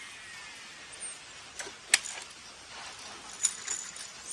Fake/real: real